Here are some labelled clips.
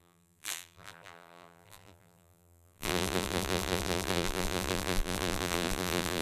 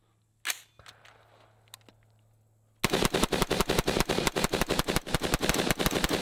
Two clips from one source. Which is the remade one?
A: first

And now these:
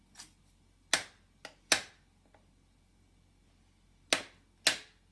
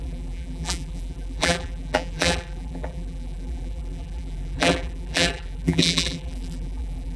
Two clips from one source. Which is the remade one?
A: second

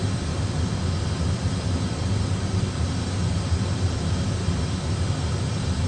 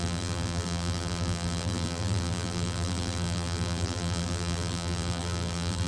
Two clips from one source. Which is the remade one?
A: second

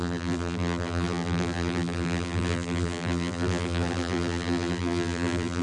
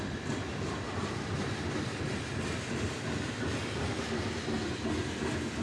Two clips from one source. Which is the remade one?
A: first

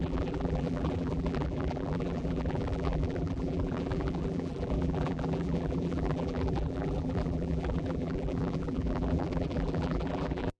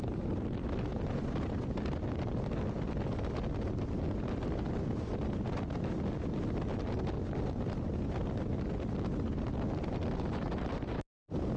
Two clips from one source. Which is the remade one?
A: first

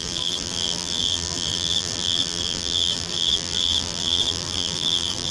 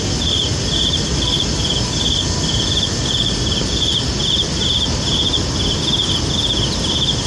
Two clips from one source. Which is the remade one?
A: first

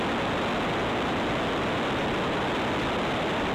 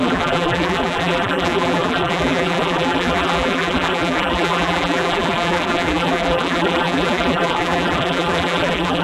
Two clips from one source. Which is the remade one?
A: second